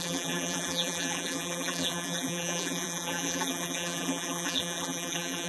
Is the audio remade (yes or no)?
yes